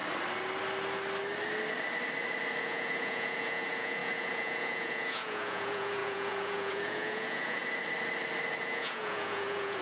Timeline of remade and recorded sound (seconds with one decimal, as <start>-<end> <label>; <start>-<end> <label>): 0.0-2.6 recorded; 2.6-7.6 remade; 7.6-8.6 recorded; 8.6-9.8 remade